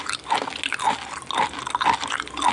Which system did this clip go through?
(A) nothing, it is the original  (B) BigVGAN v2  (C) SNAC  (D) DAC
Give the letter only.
A